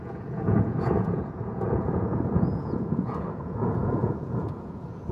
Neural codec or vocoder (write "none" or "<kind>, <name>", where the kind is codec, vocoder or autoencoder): vocoder, Vocos